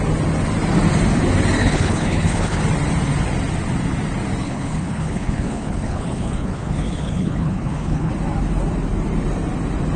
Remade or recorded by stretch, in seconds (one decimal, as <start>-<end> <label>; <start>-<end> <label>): 0.0-1.6 recorded; 1.6-2.6 remade; 2.6-4.4 recorded; 4.4-8.1 remade; 8.1-10.0 recorded